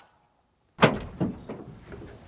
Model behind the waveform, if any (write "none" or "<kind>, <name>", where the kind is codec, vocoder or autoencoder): none